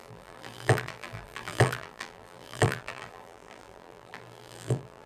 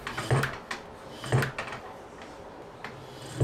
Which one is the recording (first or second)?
second